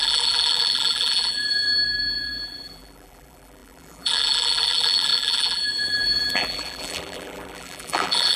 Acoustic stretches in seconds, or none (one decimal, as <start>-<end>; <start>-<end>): none